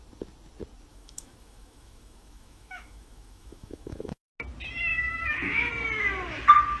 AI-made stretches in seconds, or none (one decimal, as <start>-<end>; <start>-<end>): 0.9-4.3; 4.9-5.7